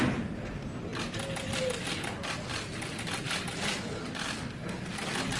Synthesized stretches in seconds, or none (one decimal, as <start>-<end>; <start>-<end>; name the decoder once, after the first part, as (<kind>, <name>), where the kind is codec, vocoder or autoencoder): none